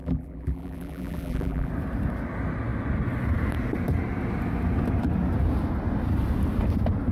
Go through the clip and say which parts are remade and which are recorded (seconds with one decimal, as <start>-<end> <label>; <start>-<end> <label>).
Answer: 0.0-1.7 remade; 1.7-7.1 recorded